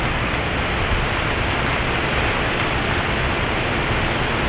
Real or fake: real